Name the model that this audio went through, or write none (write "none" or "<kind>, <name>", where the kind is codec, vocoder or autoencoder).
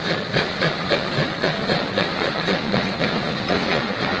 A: vocoder, Vocos